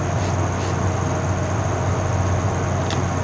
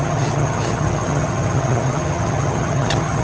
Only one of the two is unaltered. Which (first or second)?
first